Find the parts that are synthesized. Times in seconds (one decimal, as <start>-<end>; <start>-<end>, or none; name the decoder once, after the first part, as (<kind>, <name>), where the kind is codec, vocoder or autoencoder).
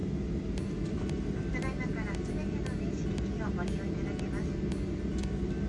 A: none